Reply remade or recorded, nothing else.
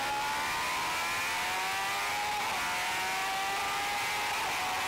recorded